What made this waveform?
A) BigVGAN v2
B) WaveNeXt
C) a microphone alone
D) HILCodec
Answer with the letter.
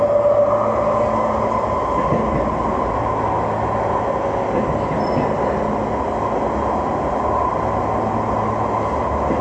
C